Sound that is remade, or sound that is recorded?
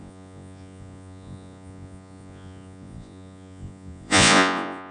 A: remade